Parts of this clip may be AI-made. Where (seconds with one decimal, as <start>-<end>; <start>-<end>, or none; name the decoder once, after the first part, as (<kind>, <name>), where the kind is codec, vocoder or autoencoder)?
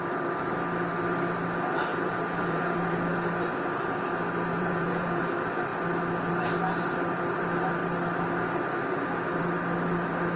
1.9-3.0 (vocoder, Vocos); 4.5-5.2